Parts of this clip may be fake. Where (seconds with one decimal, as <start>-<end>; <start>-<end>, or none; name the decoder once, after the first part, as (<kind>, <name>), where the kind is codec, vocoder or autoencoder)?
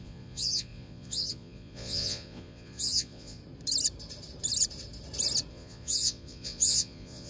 0.0-3.4 (vocoder, Vocos); 5.5-7.3